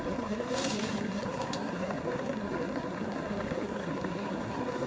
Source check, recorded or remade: remade